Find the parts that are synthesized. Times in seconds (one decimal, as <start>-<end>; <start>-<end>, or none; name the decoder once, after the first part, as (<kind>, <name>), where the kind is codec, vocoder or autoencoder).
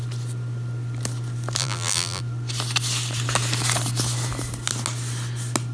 1.6-2.2 (vocoder, BigVGAN v2)